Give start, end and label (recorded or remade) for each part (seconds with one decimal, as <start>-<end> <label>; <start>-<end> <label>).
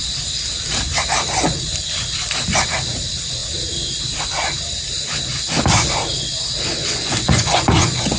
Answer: 0.0-6.8 recorded; 6.8-8.2 remade